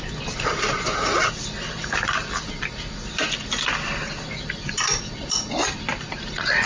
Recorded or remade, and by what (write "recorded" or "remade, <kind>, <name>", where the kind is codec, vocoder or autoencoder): recorded